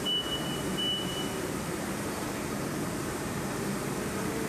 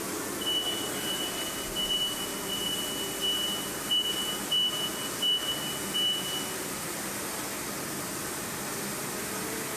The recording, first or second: second